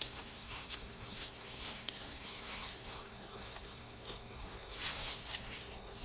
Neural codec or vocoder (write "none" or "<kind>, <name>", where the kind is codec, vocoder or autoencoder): codec, SNAC